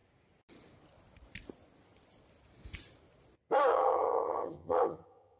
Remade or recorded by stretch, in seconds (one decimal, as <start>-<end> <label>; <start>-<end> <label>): 0.0-3.7 recorded; 3.7-5.4 remade